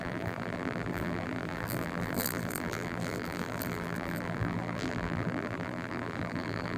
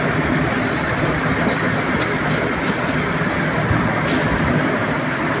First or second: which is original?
second